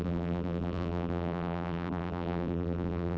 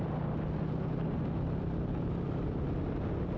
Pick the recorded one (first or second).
second